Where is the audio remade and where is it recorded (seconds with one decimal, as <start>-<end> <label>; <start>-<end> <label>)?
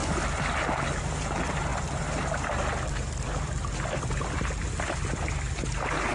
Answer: 0.0-6.1 recorded